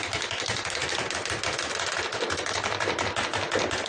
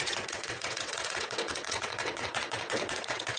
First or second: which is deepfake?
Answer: second